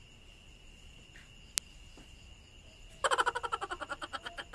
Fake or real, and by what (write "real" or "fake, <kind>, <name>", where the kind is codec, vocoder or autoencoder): real